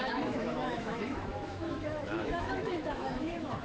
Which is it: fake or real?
fake